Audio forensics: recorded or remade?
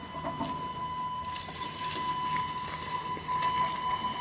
recorded